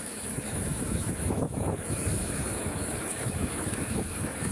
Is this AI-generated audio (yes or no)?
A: yes